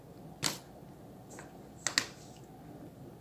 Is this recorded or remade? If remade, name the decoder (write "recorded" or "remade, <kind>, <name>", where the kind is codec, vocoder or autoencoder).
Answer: recorded